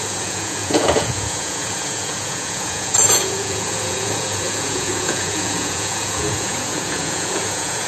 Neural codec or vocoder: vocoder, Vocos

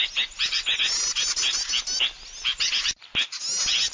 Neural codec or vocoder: none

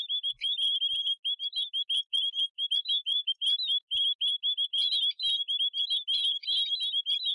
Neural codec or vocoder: none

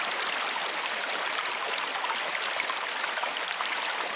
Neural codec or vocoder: none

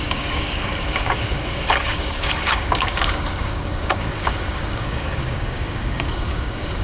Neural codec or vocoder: codec, DAC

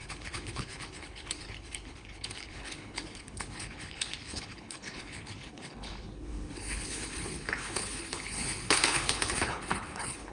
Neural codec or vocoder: codec, HILCodec